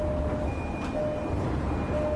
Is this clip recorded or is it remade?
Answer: recorded